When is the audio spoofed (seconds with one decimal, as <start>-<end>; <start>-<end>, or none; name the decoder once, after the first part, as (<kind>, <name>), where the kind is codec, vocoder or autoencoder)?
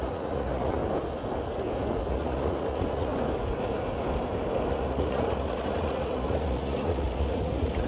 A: 0.0-0.8 (vocoder, Vocos); 2.1-3.1; 4.7-7.9